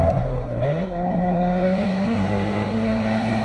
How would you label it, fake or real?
fake